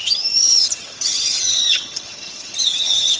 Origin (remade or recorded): remade